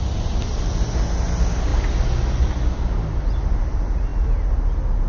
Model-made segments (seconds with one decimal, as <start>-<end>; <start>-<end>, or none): none